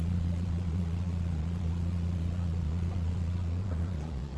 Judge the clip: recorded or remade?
remade